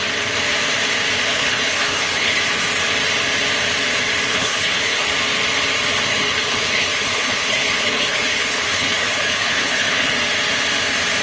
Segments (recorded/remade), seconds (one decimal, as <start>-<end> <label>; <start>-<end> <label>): 0.0-1.3 recorded; 1.3-2.4 remade; 2.4-4.3 recorded; 4.3-5.1 remade; 5.1-6.1 recorded; 6.1-10.1 remade; 10.1-11.2 recorded